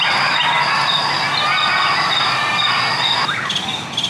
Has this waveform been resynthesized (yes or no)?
no